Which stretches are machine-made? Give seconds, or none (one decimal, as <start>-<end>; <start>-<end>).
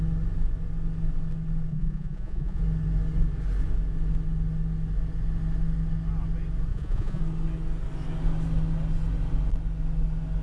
1.7-2.6; 6.7-7.2